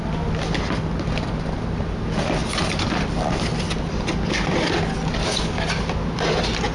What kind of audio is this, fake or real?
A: real